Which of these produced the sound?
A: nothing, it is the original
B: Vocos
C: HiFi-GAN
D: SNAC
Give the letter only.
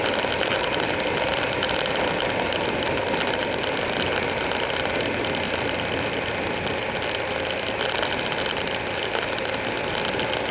A